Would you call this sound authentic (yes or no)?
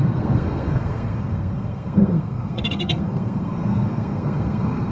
no